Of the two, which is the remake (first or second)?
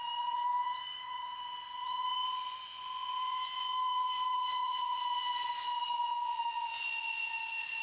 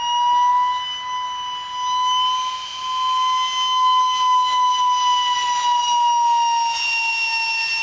first